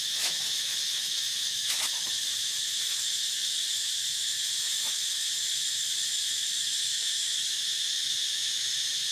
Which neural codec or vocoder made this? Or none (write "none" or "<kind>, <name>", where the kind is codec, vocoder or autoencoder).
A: autoencoder, DAC-VAE